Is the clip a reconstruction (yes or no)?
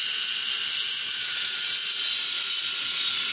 yes